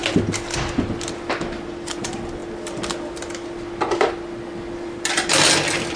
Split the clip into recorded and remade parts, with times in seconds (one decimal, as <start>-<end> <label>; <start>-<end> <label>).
0.0-6.0 recorded